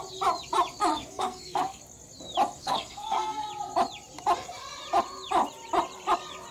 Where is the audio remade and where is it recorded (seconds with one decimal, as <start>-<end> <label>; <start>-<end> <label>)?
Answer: 0.0-0.9 recorded; 0.9-1.8 remade; 1.8-2.6 recorded; 2.6-3.5 remade; 3.5-6.5 recorded